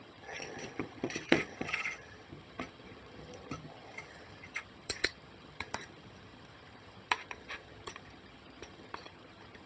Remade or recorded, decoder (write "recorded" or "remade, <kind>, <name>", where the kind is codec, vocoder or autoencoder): remade, vocoder, HiFi-GAN